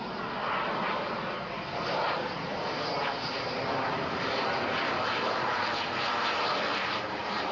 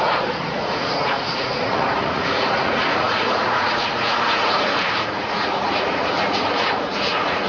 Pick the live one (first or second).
first